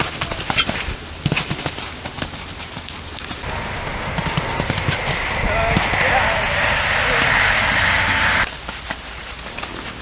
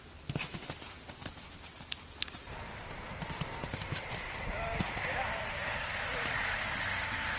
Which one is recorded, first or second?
first